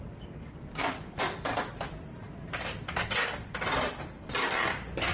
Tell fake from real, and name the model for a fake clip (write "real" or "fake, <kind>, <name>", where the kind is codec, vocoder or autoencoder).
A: real